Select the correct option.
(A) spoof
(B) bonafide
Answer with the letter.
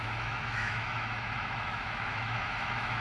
A